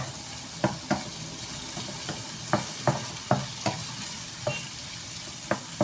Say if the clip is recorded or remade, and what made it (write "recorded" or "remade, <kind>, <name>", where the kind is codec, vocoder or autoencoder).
recorded